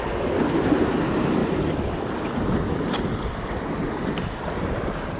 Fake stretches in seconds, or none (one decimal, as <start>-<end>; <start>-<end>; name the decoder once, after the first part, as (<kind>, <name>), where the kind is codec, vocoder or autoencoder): 1.4-2.4 (vocoder, BigVGAN v2)